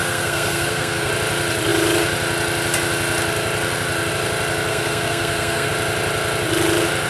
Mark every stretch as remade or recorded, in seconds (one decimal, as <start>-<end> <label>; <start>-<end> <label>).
0.0-1.1 remade; 1.1-4.7 recorded; 4.7-5.7 remade; 5.7-7.1 recorded